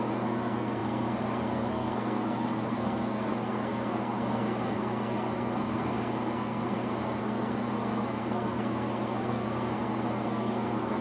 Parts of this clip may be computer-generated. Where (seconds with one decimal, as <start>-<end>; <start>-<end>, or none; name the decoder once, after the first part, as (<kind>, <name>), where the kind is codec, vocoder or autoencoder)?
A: 0.0-11.0 (codec, SNAC)

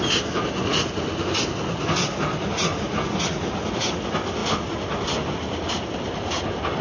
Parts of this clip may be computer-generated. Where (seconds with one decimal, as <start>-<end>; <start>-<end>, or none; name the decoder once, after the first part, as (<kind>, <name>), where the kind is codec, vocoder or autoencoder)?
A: none

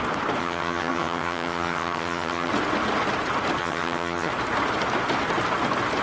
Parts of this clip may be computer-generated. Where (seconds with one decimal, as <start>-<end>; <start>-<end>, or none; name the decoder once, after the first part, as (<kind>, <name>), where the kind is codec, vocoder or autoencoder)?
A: 0.4-2.5 (vocoder, HiFi-GAN); 3.6-4.3

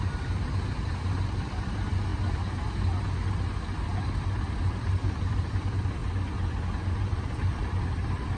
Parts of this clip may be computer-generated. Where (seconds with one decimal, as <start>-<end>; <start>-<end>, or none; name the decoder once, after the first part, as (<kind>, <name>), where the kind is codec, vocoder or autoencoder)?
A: 0.0-2.1 (vocoder, BigVGAN v2); 4.2-6.0; 6.9-8.4

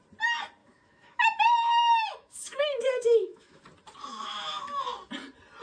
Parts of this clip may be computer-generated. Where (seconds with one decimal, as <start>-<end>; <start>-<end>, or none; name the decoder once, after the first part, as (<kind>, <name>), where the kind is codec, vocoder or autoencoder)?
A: 0.6-3.6 (autoencoder, DAC-VAE); 4.1-4.6

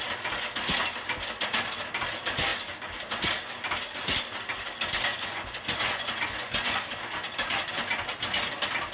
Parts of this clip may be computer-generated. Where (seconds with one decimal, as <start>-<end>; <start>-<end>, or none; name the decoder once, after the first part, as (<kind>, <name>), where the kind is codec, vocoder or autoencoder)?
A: 5.1-6.8 (vocoder, Vocos)

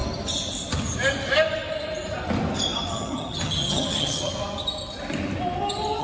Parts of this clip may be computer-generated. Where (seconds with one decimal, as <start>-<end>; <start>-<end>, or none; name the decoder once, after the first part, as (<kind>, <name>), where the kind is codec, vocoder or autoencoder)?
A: 2.9-4.3 (vocoder, HiFi-GAN)